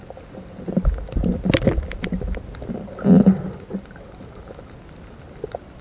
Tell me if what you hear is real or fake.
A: real